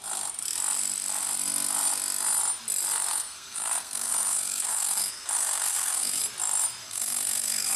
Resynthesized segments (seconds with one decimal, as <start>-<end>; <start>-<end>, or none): 3.1-6.2; 6.8-7.8